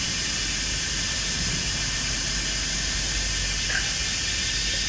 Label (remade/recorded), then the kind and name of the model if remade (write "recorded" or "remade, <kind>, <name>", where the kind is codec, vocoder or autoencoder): recorded